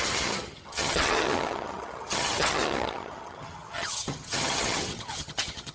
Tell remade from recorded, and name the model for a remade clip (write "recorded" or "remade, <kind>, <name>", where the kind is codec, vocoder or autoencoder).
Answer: remade, vocoder, HiFi-GAN